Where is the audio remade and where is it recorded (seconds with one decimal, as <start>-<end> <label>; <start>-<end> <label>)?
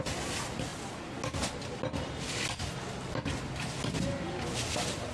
0.0-5.1 recorded